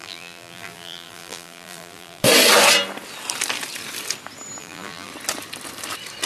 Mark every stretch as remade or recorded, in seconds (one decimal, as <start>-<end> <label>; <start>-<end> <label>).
0.0-2.2 remade; 2.2-4.6 recorded; 4.6-5.1 remade; 5.1-6.3 recorded